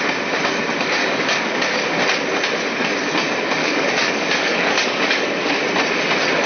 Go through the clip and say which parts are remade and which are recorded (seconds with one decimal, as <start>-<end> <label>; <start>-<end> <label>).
0.0-1.0 recorded; 1.0-1.6 remade; 1.6-3.6 recorded; 3.6-5.6 remade; 5.6-6.5 recorded